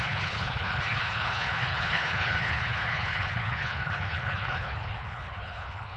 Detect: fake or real fake